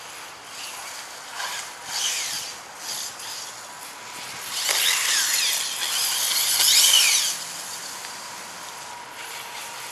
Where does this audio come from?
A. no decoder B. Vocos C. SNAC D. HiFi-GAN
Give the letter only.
A